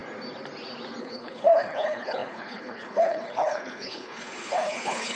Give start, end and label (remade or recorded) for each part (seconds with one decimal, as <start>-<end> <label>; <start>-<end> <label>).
0.0-1.0 recorded; 1.0-5.2 remade